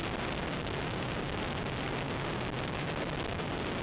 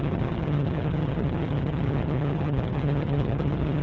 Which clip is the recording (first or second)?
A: first